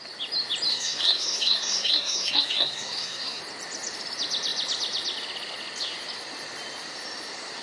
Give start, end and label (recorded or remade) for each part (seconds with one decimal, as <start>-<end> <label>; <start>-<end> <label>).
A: 0.0-0.7 recorded; 0.7-3.4 remade; 3.4-7.6 recorded